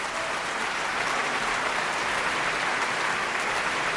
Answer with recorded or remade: recorded